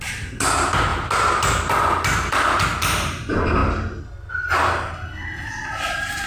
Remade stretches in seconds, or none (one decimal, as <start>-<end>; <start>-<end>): none